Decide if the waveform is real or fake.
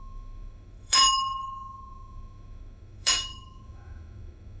fake